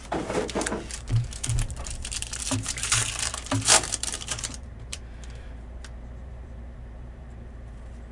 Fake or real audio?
fake